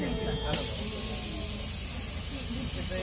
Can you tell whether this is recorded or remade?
recorded